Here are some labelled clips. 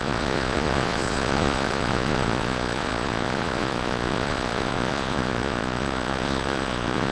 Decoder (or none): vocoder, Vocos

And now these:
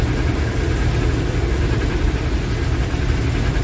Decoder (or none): none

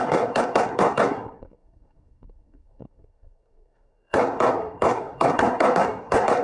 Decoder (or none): codec, SNAC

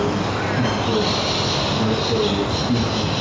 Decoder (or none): none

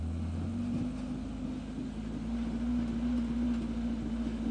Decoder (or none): none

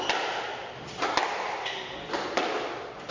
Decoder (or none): none